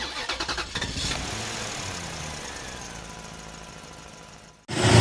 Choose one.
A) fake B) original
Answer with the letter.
B